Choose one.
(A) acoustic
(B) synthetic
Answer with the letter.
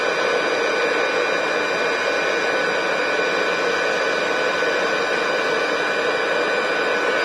A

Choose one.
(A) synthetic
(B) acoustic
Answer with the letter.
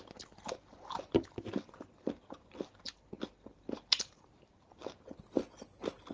B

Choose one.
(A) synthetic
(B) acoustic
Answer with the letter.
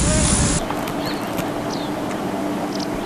B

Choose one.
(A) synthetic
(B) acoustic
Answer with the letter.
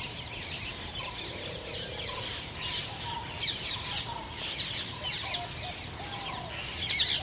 B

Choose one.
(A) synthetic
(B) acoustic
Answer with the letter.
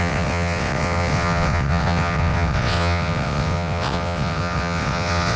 A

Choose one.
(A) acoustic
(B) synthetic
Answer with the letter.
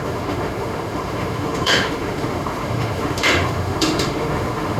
B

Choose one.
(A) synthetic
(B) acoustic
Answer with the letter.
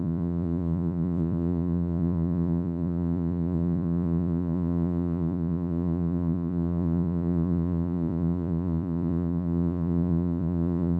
A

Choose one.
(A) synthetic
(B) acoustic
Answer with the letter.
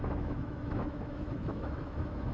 A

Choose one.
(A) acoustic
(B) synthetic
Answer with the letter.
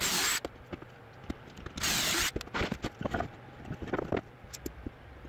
A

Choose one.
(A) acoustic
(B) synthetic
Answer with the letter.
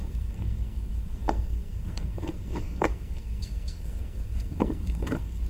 B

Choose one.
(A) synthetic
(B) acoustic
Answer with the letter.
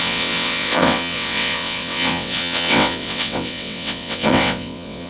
A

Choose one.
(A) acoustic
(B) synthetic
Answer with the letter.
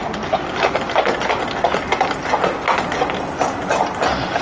A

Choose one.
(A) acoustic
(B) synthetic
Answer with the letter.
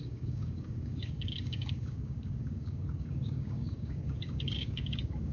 B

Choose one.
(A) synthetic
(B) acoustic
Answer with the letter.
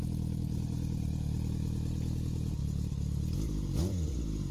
B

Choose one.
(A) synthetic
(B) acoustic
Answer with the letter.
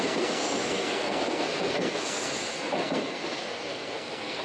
A